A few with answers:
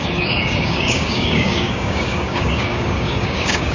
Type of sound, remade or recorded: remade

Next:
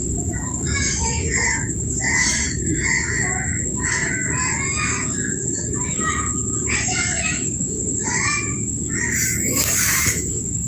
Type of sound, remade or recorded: remade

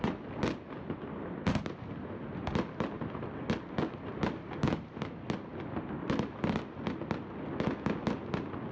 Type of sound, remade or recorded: recorded